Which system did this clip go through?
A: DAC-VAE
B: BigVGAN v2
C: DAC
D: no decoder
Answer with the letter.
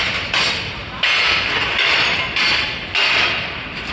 B